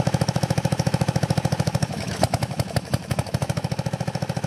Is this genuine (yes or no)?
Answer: no